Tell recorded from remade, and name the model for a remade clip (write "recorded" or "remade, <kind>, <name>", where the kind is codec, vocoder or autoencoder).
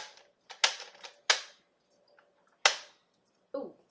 recorded